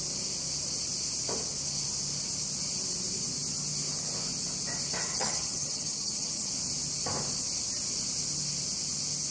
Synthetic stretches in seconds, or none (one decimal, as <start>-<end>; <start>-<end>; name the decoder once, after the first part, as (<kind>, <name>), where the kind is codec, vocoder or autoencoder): 5.1-6.5 (vocoder, HiFi-GAN)